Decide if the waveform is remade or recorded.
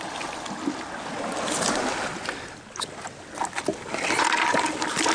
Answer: recorded